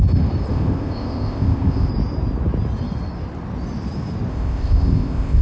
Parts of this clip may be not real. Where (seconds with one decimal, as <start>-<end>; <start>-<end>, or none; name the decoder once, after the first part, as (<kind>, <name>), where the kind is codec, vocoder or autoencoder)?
0.5-1.9 (codec, ZipCodec); 4.3-5.4